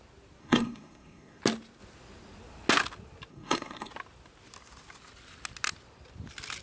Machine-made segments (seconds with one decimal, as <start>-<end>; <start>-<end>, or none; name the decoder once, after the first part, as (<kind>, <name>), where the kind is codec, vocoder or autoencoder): 0.4-1.4 (codec, SNAC); 3.3-3.9